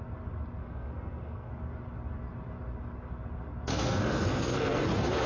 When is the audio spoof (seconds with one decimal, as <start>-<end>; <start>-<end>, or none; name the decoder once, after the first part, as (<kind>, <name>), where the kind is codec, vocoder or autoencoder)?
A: 0.6-1.5 (codec, SNAC); 3.7-4.8